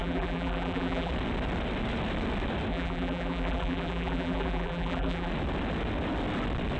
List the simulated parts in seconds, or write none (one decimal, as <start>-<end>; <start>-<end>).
0.0-1.1; 2.7-5.3